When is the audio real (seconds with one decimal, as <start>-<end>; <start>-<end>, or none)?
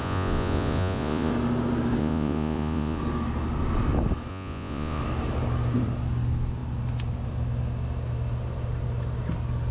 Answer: 1.3-2.0; 3.0-4.3; 5.0-9.7